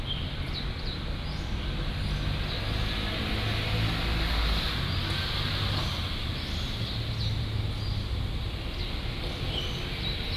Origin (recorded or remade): recorded